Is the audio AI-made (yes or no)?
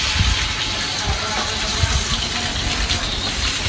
no